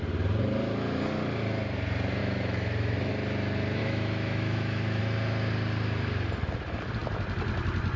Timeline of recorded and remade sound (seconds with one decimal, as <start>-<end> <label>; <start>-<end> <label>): 0.0-2.2 recorded; 2.2-3.1 remade; 3.1-3.8 recorded; 3.8-5.0 remade; 5.0-8.0 recorded